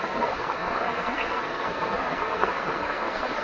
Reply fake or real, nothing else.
fake